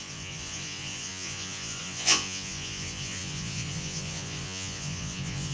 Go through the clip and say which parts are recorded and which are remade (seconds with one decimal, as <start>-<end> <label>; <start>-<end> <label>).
0.0-5.5 remade